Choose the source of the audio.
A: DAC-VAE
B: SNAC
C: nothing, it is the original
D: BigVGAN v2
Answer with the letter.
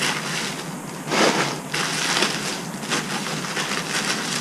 C